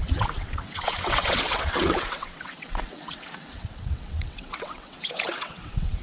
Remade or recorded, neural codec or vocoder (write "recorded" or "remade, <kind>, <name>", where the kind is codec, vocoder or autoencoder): remade, vocoder, WaveNeXt